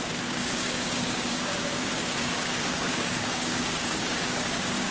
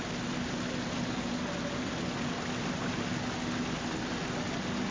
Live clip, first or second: second